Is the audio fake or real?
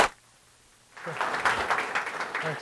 fake